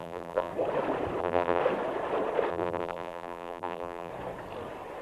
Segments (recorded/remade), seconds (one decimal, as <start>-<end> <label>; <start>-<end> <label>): 0.0-0.5 remade; 0.5-1.2 recorded; 1.2-1.6 remade; 1.6-2.5 recorded; 2.5-4.1 remade; 4.1-5.0 recorded